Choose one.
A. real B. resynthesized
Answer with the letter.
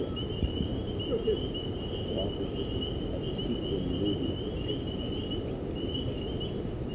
A